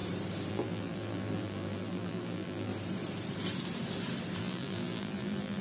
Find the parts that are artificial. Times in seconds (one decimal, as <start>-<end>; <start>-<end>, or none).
0.5-2.7; 4.4-5.6